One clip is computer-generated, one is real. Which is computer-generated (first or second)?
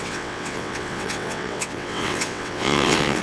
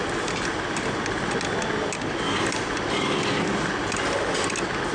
first